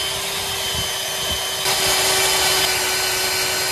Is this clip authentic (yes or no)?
yes